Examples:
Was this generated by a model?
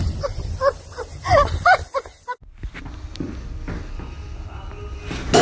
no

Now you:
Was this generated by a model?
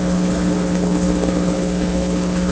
yes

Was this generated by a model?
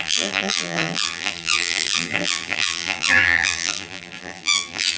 yes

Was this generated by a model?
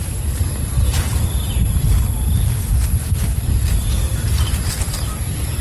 no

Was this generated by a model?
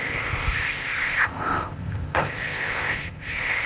yes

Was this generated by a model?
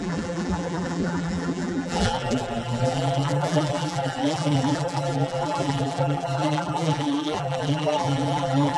yes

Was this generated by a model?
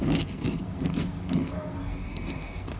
yes